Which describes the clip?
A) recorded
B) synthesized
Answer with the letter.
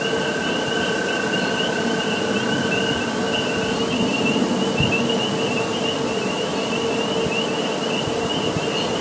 A